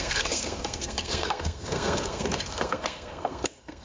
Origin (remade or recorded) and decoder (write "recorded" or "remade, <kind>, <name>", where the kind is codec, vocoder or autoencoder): remade, codec, SNAC